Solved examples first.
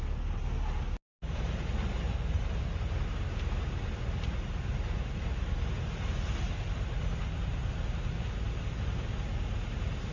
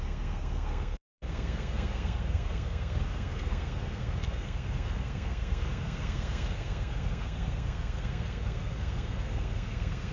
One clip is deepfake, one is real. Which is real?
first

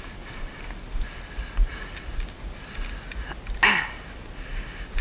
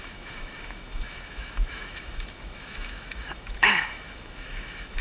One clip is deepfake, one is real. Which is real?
first